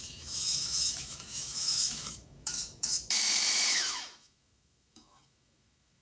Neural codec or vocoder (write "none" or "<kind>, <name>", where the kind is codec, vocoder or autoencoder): autoencoder, DAC-VAE